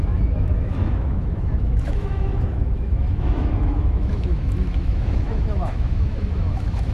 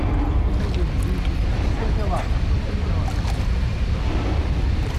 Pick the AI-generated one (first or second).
first